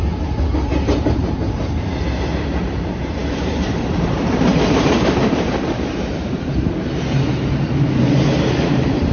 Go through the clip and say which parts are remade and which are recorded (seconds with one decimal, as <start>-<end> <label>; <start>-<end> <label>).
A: 0.0-6.5 remade; 6.5-8.0 recorded; 8.0-9.1 remade